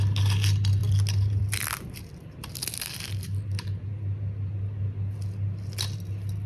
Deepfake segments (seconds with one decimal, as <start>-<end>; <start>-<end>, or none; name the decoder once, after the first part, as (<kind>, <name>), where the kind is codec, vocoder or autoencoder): none